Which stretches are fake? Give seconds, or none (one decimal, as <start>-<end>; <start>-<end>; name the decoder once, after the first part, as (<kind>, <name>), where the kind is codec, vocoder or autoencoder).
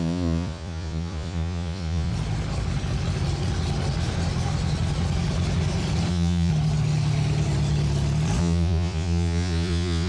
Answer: 0.0-2.1 (vocoder, Vocos); 6.1-6.5; 8.4-10.1